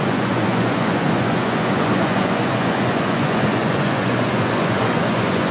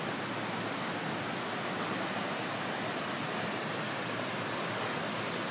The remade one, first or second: first